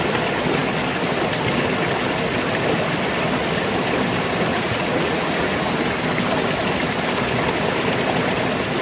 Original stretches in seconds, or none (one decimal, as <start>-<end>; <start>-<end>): 0.0-4.5; 5.7-8.8